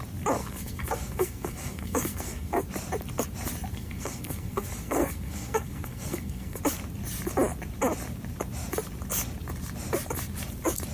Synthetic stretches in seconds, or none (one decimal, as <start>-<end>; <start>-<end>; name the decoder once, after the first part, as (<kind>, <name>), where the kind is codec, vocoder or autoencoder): 0.4-2.6 (codec, SNAC); 3.7-6.6